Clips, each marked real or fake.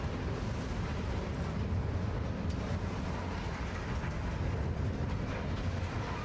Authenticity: real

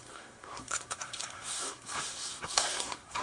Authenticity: fake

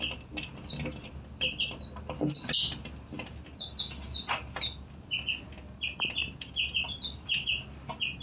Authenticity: real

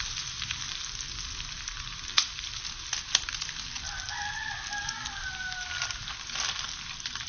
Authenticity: real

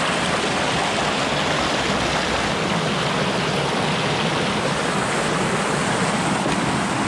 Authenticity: real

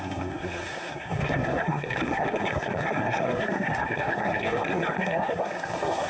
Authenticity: fake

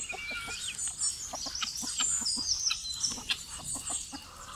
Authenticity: real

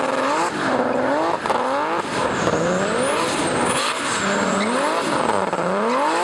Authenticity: real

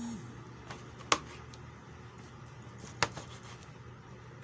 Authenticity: real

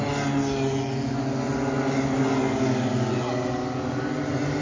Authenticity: real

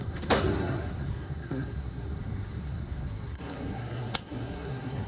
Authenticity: fake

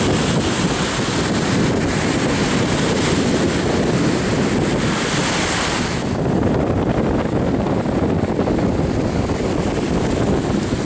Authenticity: real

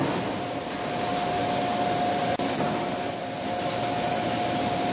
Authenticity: real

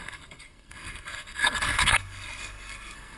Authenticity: fake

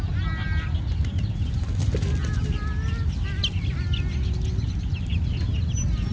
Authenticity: real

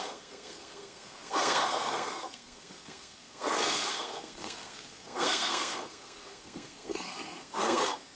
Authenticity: fake